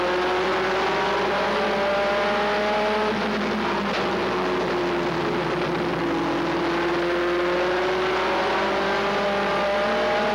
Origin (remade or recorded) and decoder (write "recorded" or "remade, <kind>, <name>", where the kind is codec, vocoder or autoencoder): recorded